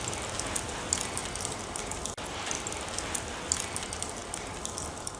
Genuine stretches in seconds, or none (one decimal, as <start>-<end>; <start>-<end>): 0.0-5.2